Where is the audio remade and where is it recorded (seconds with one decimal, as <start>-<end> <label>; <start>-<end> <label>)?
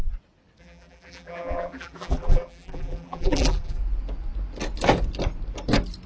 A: 0.0-0.6 recorded; 0.6-3.8 remade; 3.8-6.1 recorded